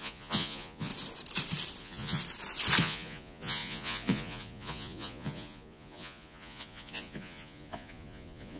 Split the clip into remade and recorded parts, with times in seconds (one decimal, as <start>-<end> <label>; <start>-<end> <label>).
0.0-0.9 remade; 0.9-1.8 recorded; 1.8-2.2 remade; 2.2-2.8 recorded; 2.8-8.6 remade